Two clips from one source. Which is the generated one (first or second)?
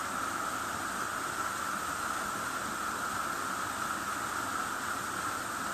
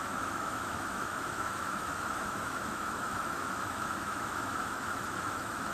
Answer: second